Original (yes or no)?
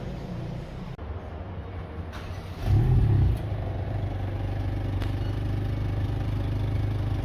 yes